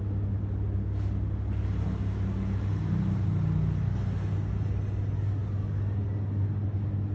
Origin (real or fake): real